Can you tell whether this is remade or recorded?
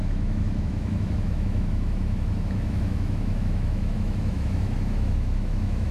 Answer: remade